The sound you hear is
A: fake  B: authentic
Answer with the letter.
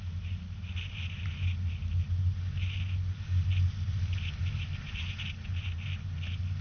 B